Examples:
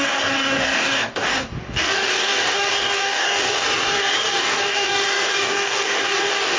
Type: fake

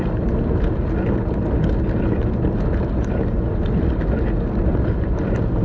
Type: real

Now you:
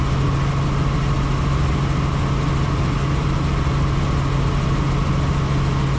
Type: real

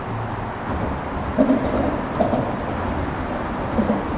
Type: real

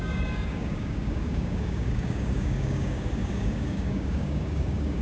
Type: fake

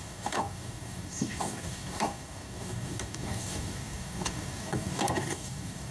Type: fake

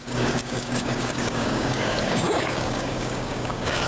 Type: fake